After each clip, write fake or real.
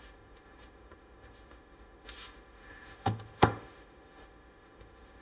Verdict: fake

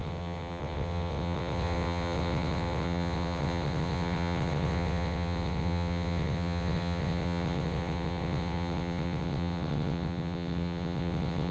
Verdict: fake